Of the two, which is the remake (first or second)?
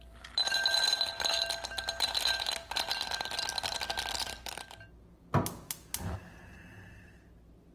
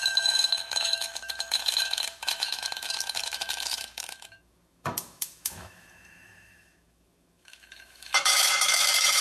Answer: second